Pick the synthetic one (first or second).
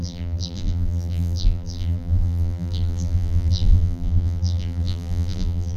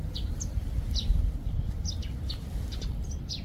first